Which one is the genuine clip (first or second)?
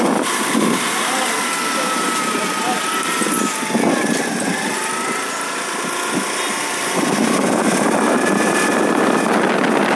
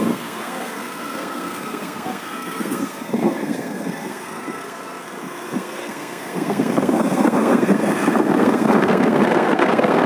first